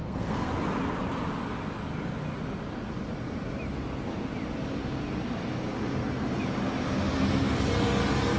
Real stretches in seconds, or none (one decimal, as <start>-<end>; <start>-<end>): 0.5-8.4